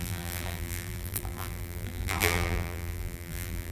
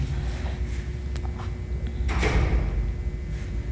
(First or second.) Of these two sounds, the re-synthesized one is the first